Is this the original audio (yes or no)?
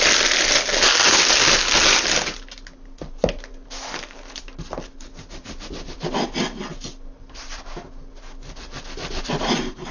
yes